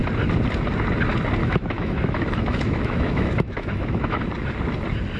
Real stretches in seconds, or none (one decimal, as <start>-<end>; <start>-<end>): 0.0-1.4; 4.2-5.2